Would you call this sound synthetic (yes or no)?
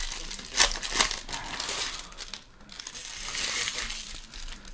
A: no